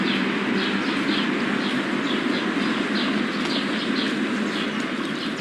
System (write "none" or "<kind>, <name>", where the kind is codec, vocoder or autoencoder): none